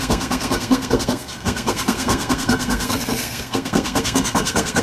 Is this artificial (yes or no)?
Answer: yes